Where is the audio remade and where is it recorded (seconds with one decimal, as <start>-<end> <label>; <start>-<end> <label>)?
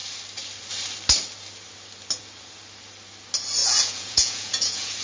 0.0-3.6 recorded; 3.6-5.0 remade